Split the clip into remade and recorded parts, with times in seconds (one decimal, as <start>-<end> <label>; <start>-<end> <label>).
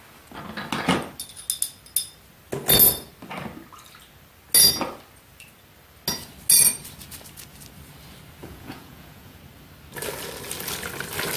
0.0-8.4 recorded; 8.4-9.4 remade; 9.4-11.4 recorded